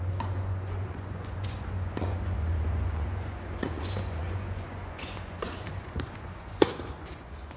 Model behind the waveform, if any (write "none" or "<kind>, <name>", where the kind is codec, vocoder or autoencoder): vocoder, Vocos